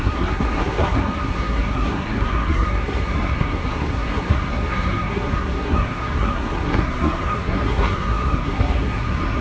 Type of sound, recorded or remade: remade